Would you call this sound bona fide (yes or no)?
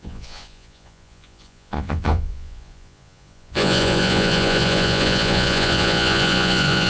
no